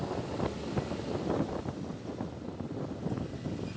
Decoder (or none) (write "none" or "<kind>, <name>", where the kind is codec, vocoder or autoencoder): none